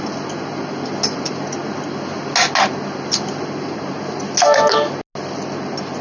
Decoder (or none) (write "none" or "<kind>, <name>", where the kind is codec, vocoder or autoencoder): none